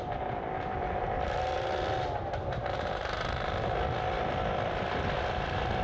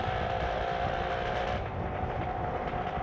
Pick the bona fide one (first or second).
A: second